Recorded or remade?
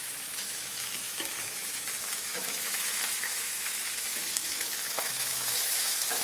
remade